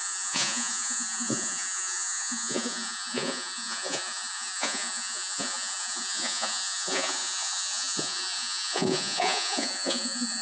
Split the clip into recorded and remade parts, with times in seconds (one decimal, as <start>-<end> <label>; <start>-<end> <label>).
0.0-10.4 remade